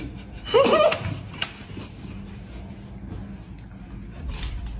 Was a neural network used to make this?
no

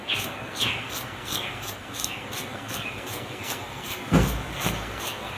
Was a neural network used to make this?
yes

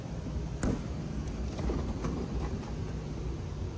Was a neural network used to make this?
no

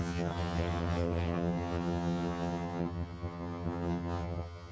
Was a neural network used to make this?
yes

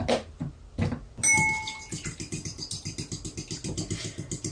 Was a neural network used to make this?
no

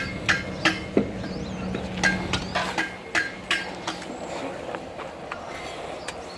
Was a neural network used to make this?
no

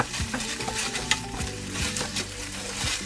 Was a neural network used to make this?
yes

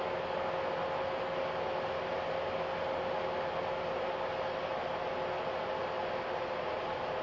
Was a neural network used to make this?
no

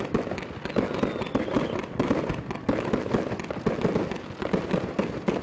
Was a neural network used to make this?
no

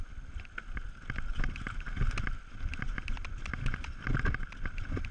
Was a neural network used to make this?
no